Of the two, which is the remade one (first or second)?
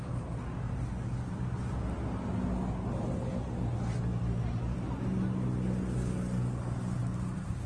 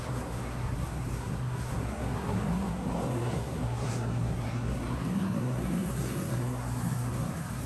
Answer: second